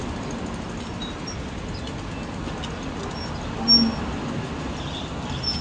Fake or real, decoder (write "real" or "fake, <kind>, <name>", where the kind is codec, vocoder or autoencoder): real